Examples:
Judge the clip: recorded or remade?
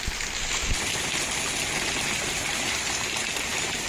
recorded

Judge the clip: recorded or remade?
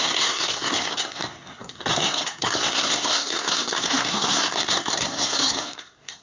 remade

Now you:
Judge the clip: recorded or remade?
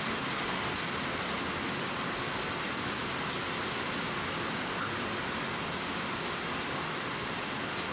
recorded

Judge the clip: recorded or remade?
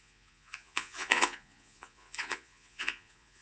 remade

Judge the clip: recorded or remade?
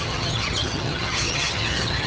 remade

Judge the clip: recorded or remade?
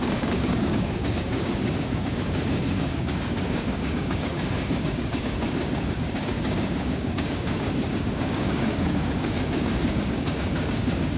remade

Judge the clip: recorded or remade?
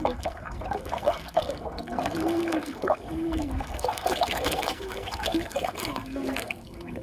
remade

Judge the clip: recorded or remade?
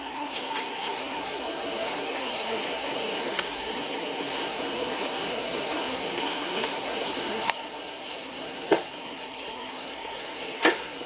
remade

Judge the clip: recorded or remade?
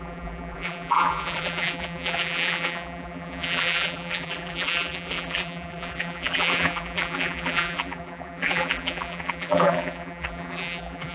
remade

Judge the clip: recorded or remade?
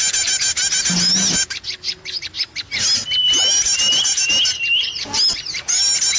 recorded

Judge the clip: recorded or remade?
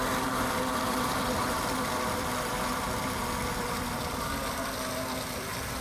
remade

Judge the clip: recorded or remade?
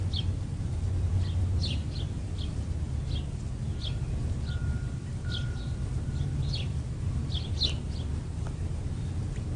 recorded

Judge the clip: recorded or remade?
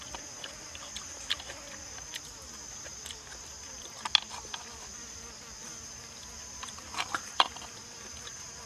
recorded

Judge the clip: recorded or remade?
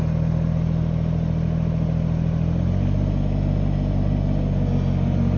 recorded